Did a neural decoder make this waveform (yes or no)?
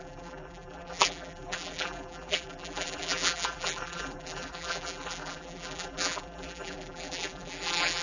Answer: yes